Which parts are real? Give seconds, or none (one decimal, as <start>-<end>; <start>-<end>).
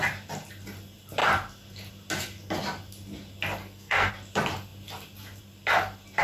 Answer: 0.0-3.6; 4.1-6.2